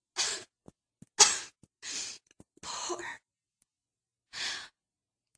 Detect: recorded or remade recorded